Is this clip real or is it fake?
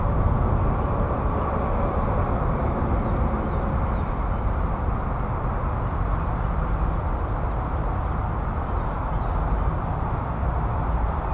real